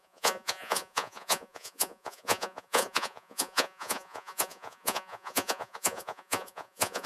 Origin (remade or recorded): remade